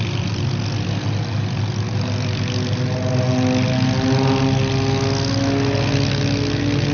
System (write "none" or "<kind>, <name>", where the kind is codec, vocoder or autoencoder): none